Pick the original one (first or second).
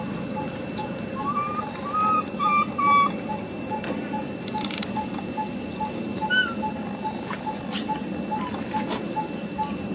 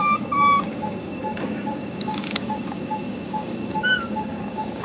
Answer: first